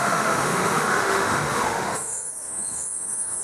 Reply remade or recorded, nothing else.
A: remade